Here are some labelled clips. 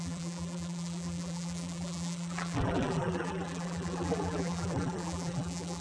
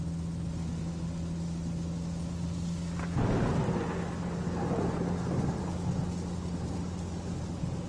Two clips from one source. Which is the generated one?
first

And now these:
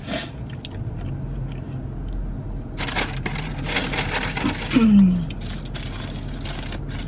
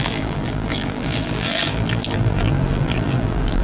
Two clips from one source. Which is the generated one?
second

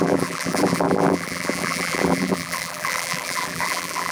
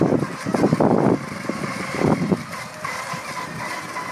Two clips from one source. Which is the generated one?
first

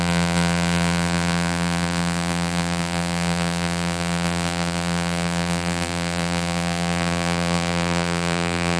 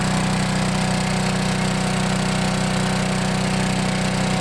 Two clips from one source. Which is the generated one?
first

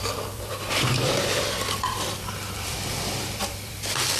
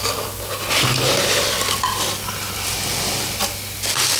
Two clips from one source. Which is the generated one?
first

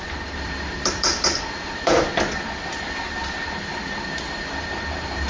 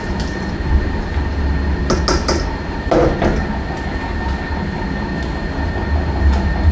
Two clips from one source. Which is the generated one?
first